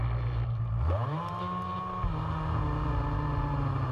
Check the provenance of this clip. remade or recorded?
recorded